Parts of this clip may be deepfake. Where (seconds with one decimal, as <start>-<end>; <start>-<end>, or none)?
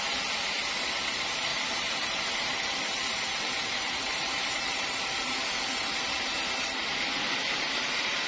1.5-6.0